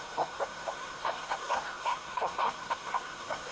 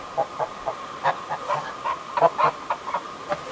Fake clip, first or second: first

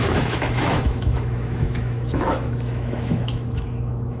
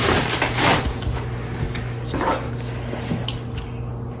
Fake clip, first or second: first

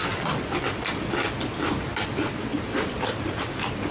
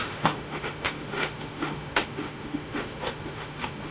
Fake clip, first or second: second